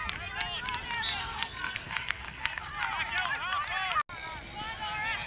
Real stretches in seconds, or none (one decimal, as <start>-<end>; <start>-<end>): 0.0-1.2; 2.7-5.3